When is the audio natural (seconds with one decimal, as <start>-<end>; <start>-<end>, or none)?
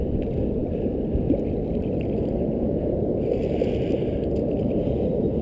none